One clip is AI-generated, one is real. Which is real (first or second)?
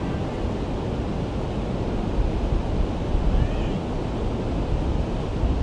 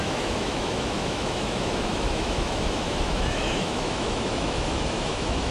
first